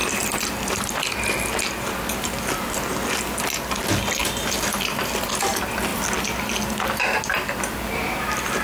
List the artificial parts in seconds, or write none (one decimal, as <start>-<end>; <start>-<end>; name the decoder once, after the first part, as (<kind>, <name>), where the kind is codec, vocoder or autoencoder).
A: 4.2-5.1 (vocoder, BigVGAN v2)